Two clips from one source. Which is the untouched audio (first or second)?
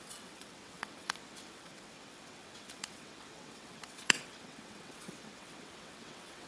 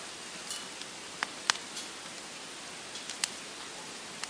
second